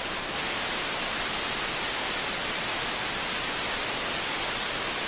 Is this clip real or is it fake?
real